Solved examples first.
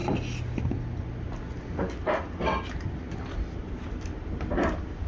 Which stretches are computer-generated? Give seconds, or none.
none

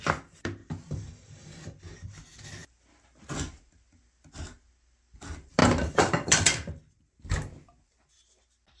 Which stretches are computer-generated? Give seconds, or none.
none

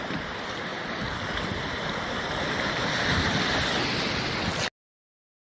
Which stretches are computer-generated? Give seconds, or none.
none

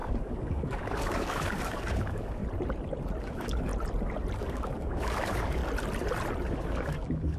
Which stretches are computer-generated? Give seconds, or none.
0.0-2.4 (codec, DAC); 3.2-3.7; 4.4-5.6; 6.5-7.4

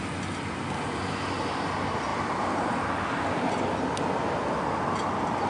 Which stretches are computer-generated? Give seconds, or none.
none

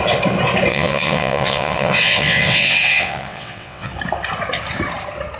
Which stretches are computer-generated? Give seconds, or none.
0.7-3.9 (vocoder, WaveNeXt)

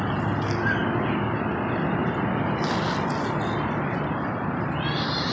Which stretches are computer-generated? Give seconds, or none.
none

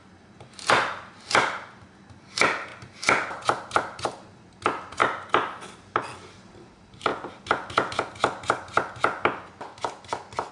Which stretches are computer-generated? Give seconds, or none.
none